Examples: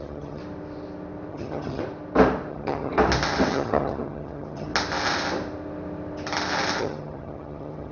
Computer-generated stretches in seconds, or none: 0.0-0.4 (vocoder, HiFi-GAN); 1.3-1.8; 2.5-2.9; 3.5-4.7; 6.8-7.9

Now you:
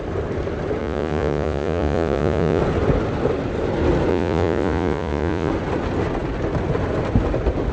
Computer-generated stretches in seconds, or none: 0.8-2.6 (vocoder, Vocos); 4.1-5.5